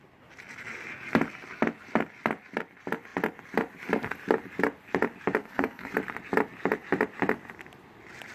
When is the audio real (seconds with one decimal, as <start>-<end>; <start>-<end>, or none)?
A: 0.0-5.4; 5.9-8.3